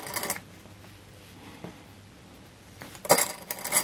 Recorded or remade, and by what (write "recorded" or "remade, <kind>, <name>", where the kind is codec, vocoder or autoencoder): recorded